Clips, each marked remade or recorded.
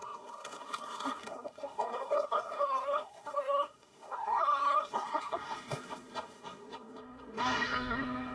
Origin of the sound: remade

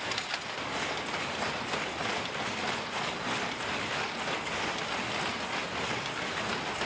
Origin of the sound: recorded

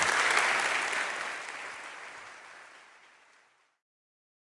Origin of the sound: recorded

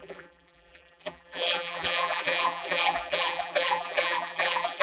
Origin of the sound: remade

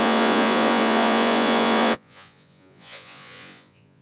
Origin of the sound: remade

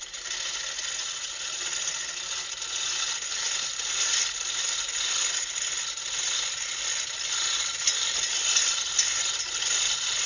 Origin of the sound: recorded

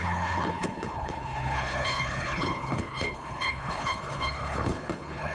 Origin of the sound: remade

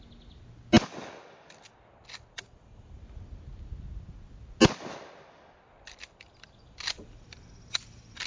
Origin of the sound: recorded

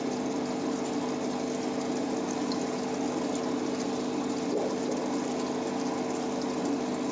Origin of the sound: recorded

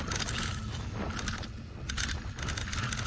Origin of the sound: recorded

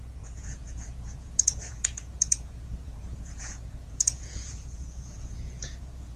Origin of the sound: remade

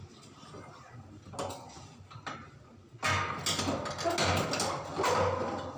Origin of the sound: recorded